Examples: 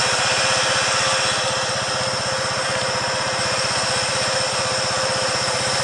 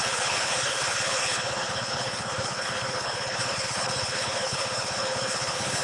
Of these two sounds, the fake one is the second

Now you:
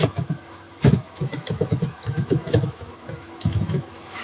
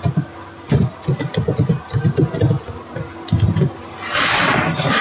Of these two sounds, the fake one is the first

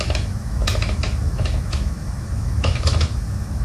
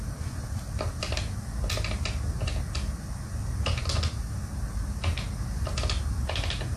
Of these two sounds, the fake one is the first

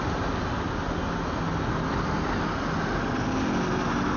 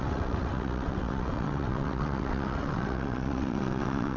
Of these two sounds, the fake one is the second